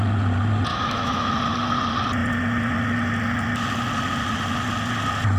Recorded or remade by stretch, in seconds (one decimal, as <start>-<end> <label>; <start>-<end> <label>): 0.0-0.7 recorded; 0.7-1.3 remade; 1.3-5.4 recorded